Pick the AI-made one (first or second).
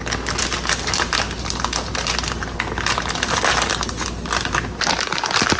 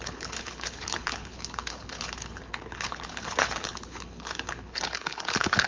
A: second